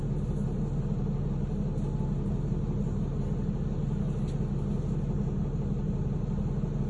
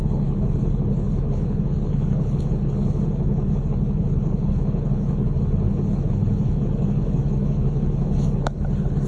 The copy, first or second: second